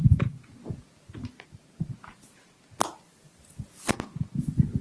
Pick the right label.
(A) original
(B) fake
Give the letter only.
A